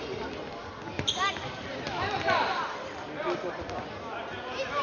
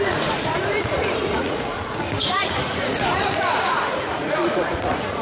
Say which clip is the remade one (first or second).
second